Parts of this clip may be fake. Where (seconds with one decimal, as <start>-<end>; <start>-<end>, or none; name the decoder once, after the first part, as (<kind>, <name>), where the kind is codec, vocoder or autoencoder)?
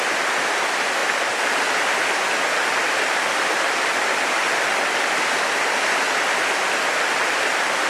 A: none